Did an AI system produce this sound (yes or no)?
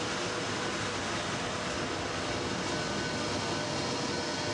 no